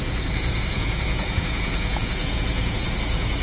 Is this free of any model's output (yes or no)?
no